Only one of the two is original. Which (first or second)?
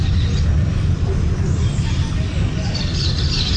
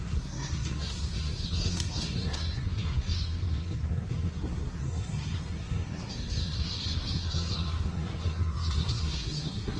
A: first